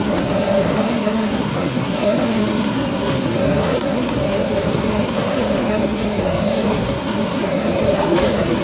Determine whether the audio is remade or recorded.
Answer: remade